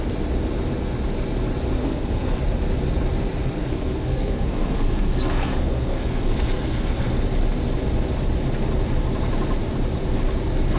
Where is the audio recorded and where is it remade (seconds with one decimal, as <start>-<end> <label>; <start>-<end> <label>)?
0.0-1.8 recorded; 1.8-2.4 remade; 2.4-3.6 recorded; 3.6-7.2 remade; 7.2-10.8 recorded